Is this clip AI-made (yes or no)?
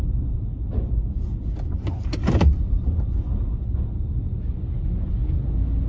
no